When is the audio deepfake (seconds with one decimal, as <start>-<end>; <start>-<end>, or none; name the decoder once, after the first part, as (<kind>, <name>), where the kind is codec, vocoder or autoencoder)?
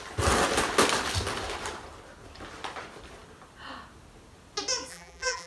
4.9-5.5 (vocoder, BigVGAN v2)